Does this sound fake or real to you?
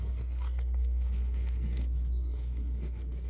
fake